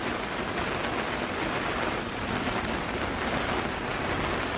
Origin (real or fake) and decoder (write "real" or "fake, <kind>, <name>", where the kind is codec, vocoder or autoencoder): real